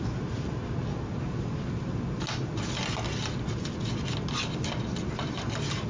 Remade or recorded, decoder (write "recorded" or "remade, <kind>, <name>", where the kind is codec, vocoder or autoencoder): recorded